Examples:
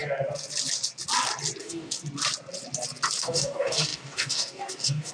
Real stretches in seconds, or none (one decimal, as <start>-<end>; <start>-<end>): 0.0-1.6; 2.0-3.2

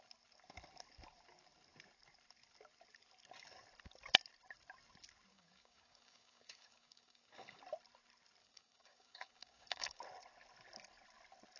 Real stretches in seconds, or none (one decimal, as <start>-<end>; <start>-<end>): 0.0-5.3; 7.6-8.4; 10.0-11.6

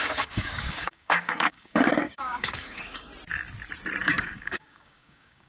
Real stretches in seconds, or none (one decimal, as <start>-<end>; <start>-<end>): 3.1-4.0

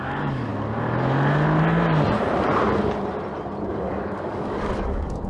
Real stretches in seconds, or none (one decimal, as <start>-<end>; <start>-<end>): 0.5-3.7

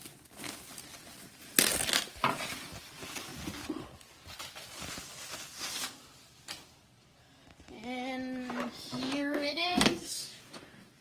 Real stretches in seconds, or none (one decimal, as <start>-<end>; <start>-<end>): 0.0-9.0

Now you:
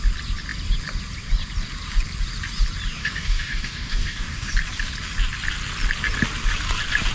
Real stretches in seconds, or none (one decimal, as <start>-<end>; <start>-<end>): 0.0-3.0; 4.5-7.1

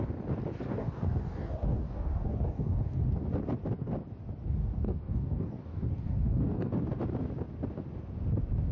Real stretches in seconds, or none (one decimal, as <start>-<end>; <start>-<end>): 0.0-0.7; 3.0-4.6; 6.7-8.7